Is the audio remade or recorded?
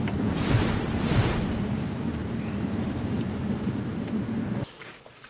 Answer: remade